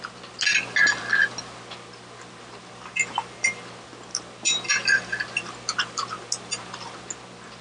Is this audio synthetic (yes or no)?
no